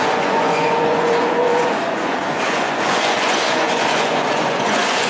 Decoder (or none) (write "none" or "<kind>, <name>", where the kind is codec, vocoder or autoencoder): vocoder, Vocos